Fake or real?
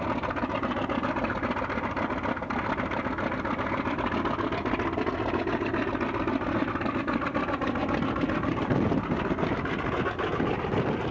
real